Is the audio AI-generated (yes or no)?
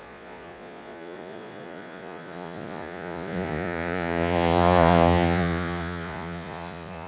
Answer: yes